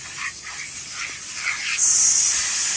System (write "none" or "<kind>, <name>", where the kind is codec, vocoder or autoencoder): none